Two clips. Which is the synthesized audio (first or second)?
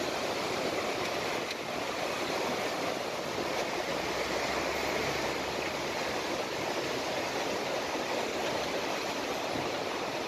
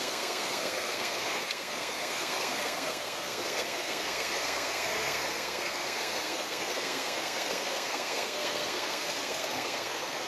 second